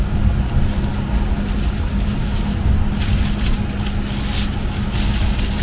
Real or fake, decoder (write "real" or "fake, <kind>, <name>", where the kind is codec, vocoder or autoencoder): real